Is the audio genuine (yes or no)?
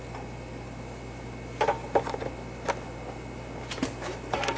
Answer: yes